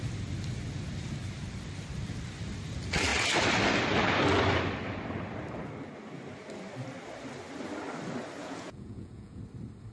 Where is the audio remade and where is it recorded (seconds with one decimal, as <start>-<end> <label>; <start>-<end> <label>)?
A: 0.0-8.4 recorded; 8.4-9.4 remade; 9.4-9.9 recorded